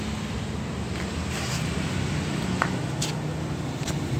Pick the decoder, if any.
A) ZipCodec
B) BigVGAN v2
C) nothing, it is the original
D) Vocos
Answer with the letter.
C